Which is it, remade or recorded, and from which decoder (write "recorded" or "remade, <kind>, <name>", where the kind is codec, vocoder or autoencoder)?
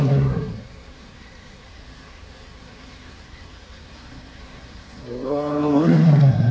remade, codec, SNAC